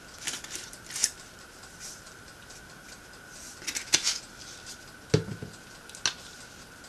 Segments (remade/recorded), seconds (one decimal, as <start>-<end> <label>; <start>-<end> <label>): 0.0-1.0 recorded; 1.0-2.6 remade; 2.6-6.9 recorded